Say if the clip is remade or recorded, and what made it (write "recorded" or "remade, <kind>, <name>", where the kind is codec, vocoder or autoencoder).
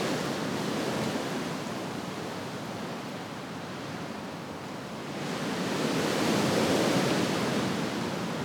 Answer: recorded